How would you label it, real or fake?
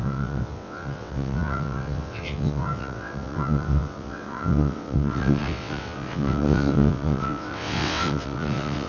fake